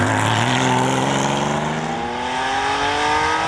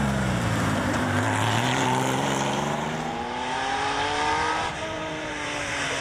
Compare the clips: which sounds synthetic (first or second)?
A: second